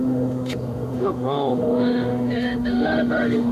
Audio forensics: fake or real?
fake